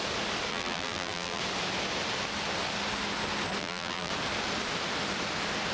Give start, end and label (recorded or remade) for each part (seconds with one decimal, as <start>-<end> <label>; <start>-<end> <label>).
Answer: 0.0-0.5 recorded; 0.5-1.4 remade; 1.4-3.6 recorded; 3.6-4.1 remade; 4.1-5.7 recorded